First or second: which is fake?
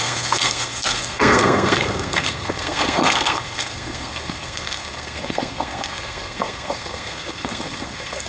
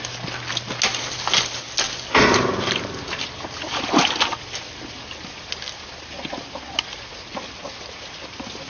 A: first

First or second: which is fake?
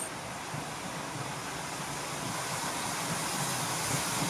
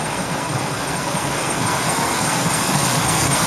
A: second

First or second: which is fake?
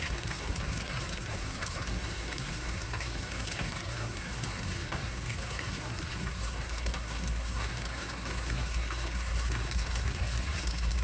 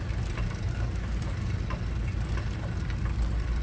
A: first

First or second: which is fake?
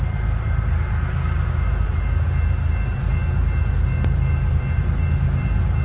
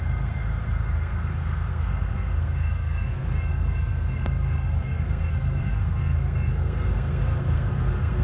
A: second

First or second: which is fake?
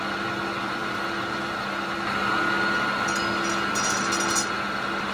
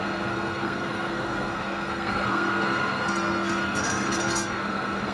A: second